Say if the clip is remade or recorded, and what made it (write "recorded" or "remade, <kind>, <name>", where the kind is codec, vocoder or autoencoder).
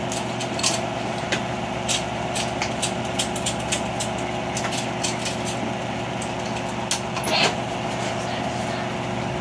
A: recorded